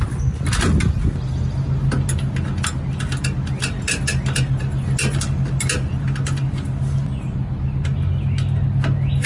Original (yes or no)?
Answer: yes